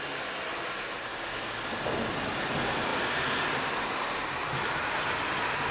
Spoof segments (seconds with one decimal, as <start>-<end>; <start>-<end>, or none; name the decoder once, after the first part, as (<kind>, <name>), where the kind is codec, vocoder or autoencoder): 1.1-1.6 (codec, DAC)